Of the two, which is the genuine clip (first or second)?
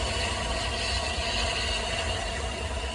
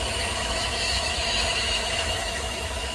first